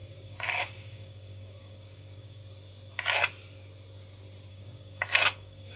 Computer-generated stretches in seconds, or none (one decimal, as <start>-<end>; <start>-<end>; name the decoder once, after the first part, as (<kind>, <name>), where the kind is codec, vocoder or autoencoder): 0.0-2.4 (codec, DAC); 4.5-5.8